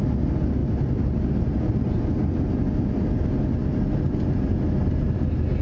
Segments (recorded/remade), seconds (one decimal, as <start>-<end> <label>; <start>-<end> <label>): 0.0-5.6 recorded